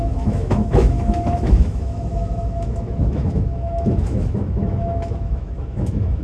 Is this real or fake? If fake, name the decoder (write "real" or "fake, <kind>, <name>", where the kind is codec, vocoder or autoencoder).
fake, autoencoder, DAC-VAE